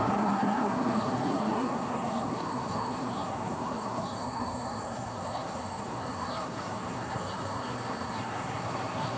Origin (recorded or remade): remade